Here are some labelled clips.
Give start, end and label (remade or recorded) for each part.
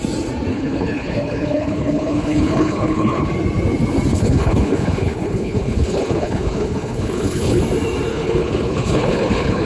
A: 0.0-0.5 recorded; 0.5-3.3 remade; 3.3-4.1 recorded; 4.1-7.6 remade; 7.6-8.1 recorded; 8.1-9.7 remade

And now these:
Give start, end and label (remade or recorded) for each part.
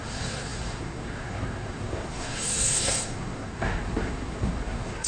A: 0.0-5.1 remade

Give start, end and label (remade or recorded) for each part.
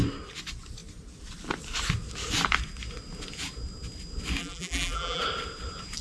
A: 0.0-4.4 recorded; 4.4-5.2 remade; 5.2-6.0 recorded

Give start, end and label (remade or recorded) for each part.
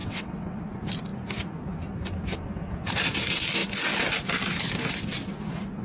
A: 0.0-0.6 remade; 0.6-5.8 recorded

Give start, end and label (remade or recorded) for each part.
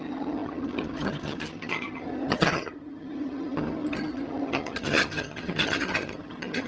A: 0.0-6.7 remade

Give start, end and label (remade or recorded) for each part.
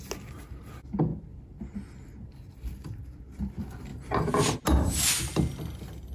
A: 0.0-6.1 recorded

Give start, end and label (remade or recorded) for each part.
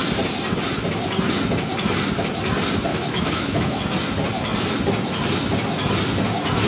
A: 0.0-2.9 recorded; 2.9-3.8 remade; 3.8-6.7 recorded